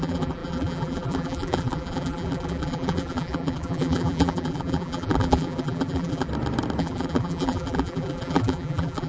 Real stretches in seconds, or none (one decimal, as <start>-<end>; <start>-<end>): 6.3-6.8